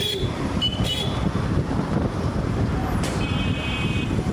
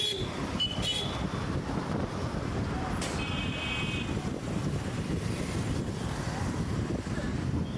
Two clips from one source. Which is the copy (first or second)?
first